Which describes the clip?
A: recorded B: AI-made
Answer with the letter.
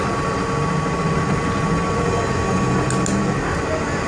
A